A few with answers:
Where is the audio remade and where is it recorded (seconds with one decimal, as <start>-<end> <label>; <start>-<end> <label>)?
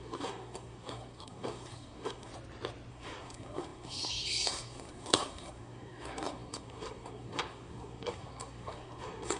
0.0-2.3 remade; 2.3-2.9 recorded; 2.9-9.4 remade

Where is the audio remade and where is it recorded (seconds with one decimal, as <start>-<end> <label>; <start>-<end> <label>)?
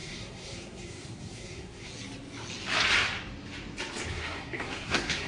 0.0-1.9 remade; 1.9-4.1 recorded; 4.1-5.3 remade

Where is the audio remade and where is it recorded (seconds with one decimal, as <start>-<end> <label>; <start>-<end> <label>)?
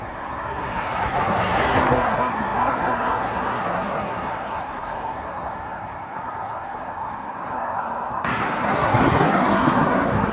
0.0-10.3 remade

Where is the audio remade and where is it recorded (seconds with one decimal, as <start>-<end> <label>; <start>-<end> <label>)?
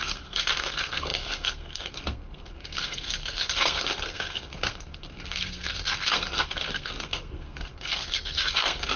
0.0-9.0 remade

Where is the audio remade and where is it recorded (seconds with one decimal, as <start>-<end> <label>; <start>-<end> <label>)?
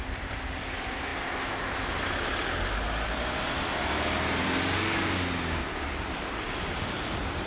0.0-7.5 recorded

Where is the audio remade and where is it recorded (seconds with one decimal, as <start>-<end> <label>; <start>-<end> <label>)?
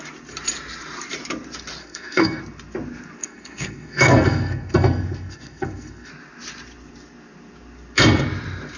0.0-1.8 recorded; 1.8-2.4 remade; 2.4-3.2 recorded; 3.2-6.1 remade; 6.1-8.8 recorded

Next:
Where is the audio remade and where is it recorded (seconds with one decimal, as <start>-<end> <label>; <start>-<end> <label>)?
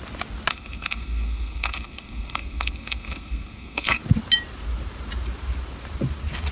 0.0-0.5 recorded; 0.5-4.0 remade; 4.0-6.5 recorded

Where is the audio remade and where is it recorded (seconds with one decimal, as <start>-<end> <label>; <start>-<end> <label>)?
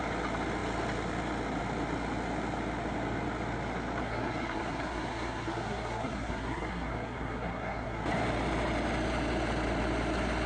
0.0-4.0 recorded; 4.0-8.0 remade; 8.0-10.5 recorded